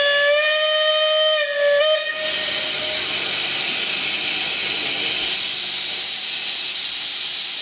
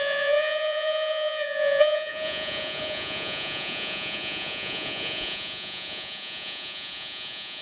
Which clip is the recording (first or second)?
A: first